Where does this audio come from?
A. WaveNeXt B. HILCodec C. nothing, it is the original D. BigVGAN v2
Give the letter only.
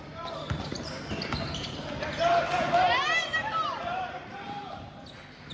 D